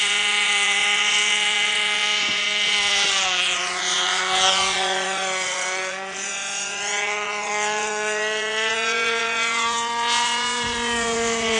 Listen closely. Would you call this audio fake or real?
fake